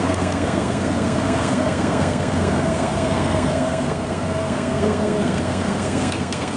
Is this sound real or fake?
fake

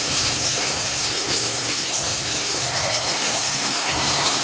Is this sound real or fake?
fake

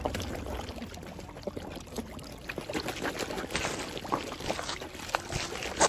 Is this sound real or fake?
real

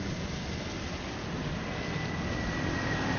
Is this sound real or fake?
real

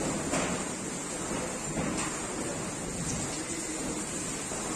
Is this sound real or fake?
real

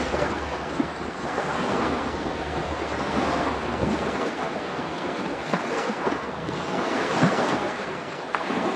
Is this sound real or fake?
fake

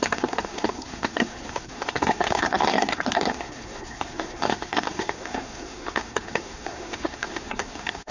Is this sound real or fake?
fake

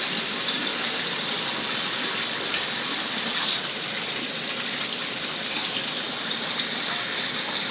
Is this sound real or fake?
real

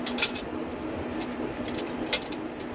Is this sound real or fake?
real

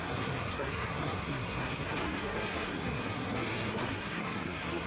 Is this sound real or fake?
fake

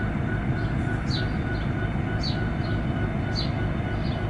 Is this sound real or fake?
real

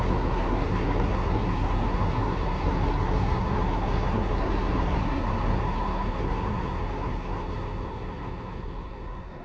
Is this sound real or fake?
fake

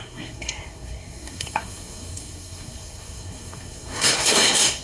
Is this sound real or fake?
fake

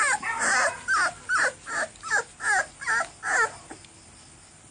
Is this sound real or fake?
real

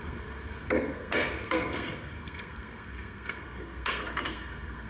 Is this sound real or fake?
fake